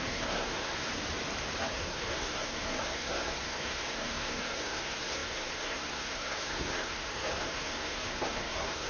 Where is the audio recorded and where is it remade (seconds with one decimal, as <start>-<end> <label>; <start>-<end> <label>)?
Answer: 0.0-0.9 remade; 0.9-1.7 recorded; 1.7-8.9 remade